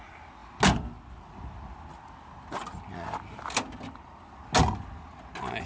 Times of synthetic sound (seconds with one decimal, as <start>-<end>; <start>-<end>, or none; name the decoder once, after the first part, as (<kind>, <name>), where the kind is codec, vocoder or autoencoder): none